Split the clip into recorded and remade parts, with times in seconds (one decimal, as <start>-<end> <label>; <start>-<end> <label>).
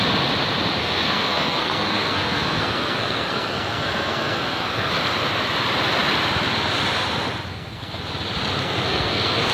0.0-0.8 recorded; 0.8-4.9 remade; 4.9-7.5 recorded; 7.5-8.0 remade; 8.0-8.6 recorded; 8.6-9.5 remade